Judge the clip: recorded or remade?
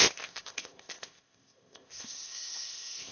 remade